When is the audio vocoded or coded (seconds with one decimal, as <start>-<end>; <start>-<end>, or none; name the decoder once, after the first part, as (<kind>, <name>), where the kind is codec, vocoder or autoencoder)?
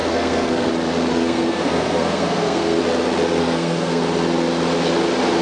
0.0-0.7 (codec, SNAC); 1.1-2.8; 3.4-4.0